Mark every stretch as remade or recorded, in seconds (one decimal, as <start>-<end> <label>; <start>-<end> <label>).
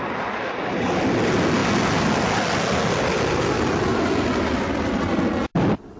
0.0-6.0 recorded